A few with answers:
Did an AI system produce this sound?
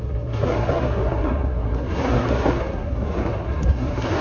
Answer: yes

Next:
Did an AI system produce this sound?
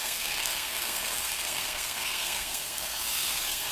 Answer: yes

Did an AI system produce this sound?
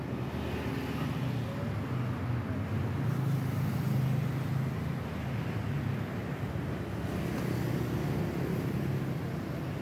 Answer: no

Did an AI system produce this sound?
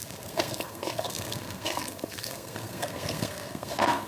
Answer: yes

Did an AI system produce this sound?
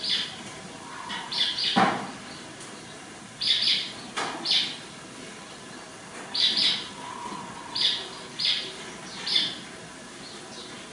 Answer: no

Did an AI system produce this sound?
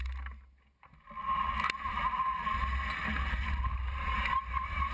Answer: no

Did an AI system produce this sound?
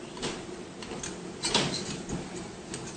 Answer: no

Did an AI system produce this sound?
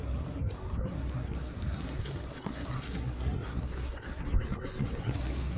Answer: yes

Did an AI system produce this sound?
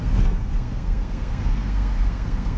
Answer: yes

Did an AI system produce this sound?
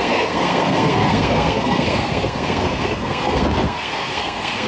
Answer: yes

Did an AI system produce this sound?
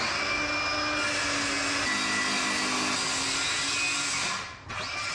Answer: no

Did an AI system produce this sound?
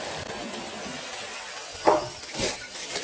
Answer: no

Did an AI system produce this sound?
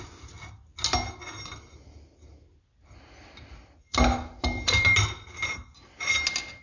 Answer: no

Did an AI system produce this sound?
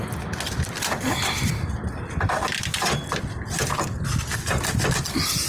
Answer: no